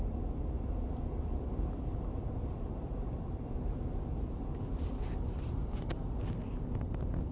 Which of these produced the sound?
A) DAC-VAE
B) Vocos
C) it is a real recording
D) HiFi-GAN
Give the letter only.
C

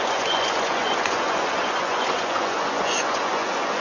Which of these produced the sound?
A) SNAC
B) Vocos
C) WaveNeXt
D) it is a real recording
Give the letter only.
B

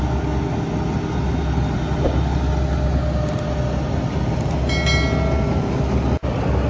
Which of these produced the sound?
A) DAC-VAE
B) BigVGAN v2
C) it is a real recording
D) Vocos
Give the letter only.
C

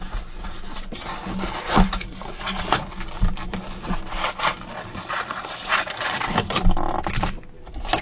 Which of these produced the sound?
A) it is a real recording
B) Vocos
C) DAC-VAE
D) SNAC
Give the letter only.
A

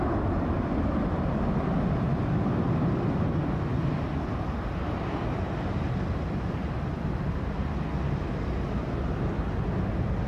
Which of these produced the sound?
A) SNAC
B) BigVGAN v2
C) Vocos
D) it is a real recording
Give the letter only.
D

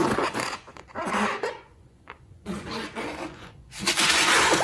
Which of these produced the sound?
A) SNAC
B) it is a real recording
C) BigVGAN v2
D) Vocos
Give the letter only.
D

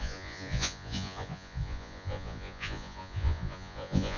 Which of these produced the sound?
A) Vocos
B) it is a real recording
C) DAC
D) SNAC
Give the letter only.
A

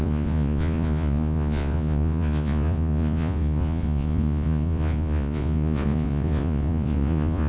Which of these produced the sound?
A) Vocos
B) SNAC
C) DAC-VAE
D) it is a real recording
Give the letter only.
A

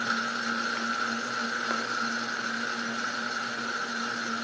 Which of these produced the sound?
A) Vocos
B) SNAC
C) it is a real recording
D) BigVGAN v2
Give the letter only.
C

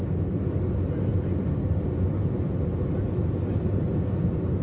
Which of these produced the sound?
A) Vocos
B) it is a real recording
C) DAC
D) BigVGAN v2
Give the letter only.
B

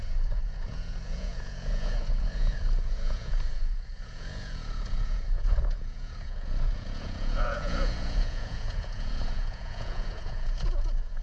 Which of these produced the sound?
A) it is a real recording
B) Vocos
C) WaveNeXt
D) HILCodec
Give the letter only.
B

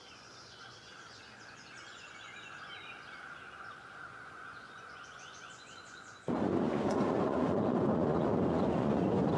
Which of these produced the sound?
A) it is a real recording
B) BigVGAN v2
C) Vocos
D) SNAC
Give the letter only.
C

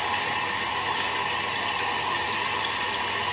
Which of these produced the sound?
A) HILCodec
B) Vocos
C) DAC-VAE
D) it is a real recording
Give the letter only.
D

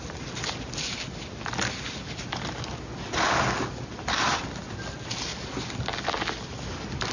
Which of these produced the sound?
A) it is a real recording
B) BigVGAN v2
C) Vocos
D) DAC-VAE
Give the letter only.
A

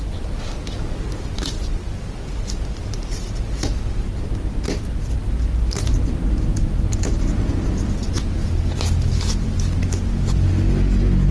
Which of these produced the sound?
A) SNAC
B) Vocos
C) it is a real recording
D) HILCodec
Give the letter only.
C